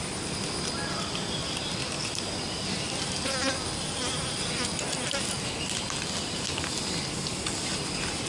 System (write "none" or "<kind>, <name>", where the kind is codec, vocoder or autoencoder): none